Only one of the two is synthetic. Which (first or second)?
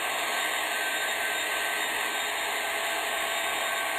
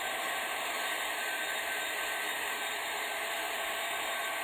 second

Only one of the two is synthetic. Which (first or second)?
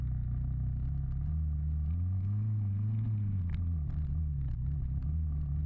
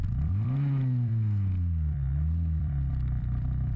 second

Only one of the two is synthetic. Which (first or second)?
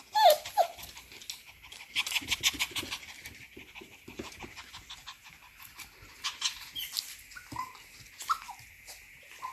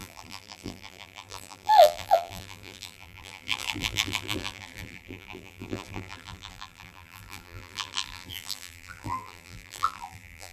second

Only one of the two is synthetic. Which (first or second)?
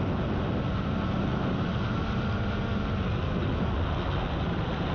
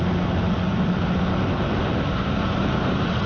second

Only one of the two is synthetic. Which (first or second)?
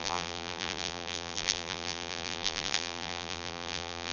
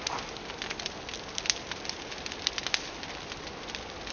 first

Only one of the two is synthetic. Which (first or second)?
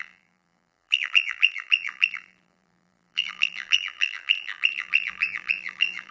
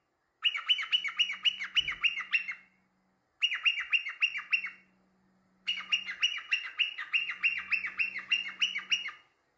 first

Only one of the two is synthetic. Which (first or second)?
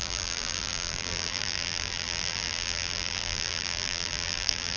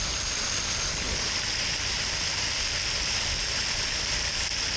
first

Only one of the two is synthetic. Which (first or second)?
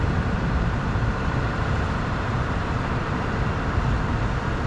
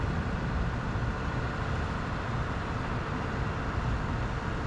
first